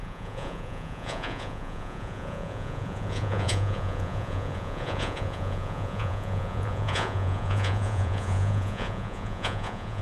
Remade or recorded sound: remade